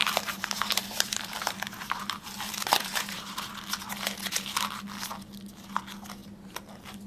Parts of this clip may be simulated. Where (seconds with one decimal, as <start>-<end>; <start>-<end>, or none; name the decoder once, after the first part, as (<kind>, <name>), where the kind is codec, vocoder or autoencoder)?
0.0-3.5 (vocoder, BigVGAN v2)